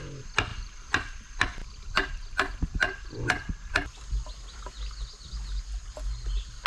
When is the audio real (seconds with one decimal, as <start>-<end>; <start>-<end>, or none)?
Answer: 0.0-0.5; 1.2-6.7